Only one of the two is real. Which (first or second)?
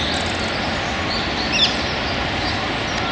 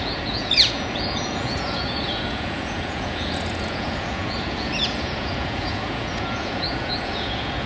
first